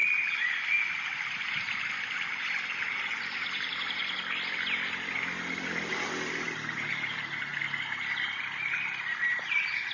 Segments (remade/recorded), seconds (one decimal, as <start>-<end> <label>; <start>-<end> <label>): 0.0-2.8 recorded; 2.8-4.0 remade; 4.0-5.9 recorded; 5.9-7.5 remade; 7.5-8.4 recorded; 8.4-9.9 remade